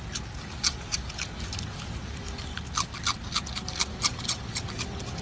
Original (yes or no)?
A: yes